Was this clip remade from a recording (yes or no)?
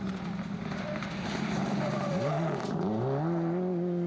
no